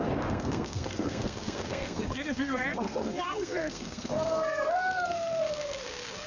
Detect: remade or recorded remade